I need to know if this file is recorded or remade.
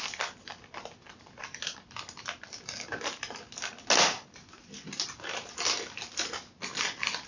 recorded